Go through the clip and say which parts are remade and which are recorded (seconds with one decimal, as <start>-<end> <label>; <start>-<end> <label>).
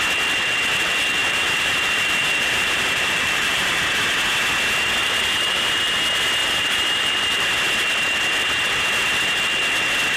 0.0-1.2 recorded; 1.2-3.8 remade; 3.8-5.0 recorded; 5.0-5.8 remade; 5.8-6.4 recorded; 6.4-7.2 remade; 7.2-10.2 recorded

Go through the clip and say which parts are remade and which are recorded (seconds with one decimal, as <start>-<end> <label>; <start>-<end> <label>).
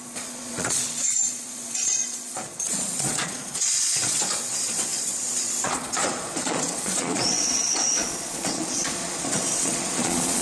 0.0-10.4 remade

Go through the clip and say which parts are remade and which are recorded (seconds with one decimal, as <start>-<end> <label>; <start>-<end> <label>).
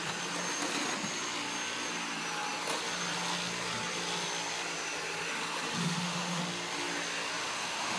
0.0-5.8 recorded; 5.8-6.4 remade; 6.4-7.4 recorded; 7.4-8.0 remade